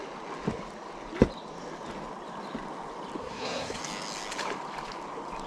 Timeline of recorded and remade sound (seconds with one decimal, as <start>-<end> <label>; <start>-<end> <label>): 0.0-3.2 recorded; 3.2-3.8 remade; 3.8-5.5 recorded